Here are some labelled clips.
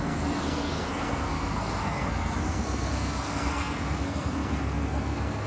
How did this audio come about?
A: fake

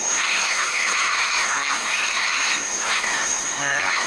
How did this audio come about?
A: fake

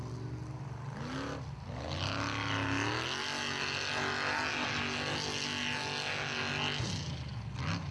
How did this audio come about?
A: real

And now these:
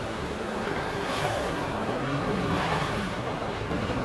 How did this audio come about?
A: fake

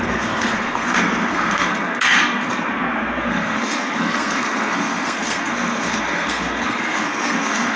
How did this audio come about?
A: fake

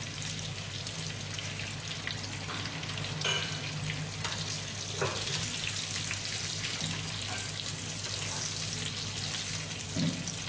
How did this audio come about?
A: real